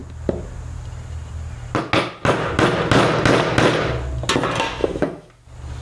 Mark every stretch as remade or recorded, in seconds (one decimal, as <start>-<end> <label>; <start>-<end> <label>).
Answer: 0.0-4.8 recorded; 4.8-5.3 remade; 5.3-5.8 recorded